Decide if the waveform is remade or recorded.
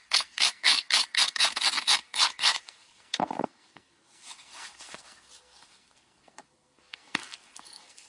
remade